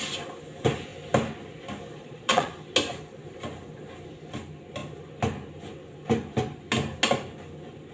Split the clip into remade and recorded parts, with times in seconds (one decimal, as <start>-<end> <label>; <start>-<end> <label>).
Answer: 0.0-2.0 recorded; 2.0-2.5 remade; 2.5-7.9 recorded